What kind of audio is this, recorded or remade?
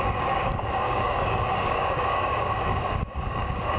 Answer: remade